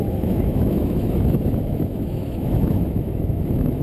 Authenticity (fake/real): fake